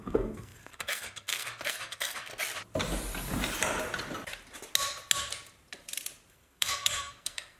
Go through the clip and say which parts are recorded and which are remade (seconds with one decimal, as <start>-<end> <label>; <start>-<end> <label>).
0.0-2.3 remade; 2.3-6.3 recorded; 6.3-7.6 remade